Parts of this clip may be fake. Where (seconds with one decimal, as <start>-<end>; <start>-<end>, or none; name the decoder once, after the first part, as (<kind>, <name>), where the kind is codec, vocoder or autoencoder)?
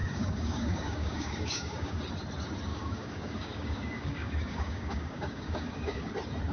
0.0-2.0 (codec, DAC); 2.7-6.1